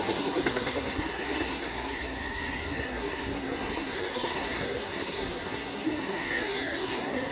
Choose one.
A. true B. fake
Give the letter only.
B